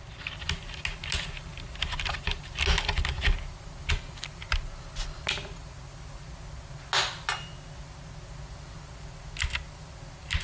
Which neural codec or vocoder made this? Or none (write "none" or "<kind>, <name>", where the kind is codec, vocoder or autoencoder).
none